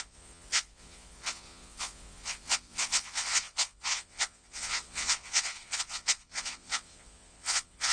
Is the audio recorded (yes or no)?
no